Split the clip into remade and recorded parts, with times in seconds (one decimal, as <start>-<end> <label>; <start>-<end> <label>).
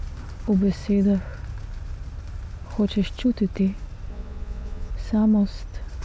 0.0-4.1 recorded; 4.1-4.9 remade; 4.9-6.0 recorded